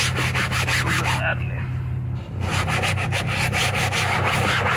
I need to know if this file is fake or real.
real